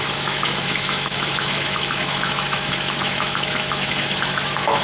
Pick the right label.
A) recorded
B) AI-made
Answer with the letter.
B